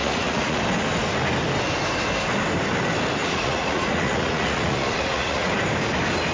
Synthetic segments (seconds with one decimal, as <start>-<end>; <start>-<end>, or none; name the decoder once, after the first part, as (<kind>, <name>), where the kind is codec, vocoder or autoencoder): 0.0-0.6 (vocoder, Vocos); 3.2-5.5